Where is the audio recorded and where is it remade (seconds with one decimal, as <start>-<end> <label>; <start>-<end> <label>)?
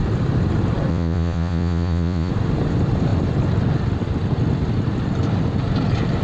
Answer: 0.0-0.9 recorded; 0.9-2.3 remade; 2.3-6.2 recorded